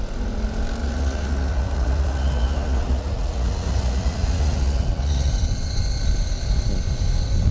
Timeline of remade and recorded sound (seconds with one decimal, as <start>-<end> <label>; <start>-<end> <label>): 0.0-0.8 recorded; 0.8-5.3 remade; 5.3-7.5 recorded